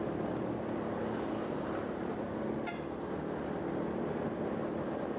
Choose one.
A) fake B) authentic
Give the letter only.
B